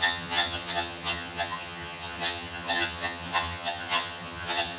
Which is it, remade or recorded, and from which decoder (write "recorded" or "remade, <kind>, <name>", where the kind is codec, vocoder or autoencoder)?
remade, vocoder, HiFi-GAN